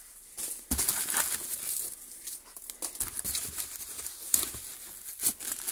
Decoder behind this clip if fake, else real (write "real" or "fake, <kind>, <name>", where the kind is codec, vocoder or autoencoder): real